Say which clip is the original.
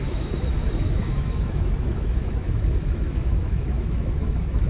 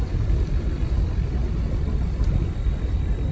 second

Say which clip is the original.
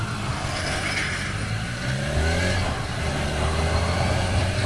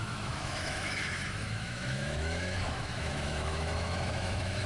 first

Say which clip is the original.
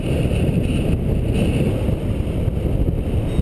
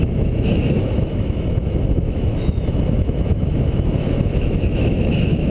first